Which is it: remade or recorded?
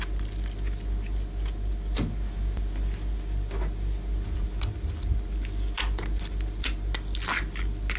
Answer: recorded